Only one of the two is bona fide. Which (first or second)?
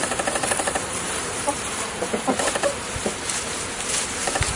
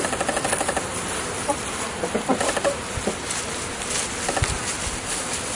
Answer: second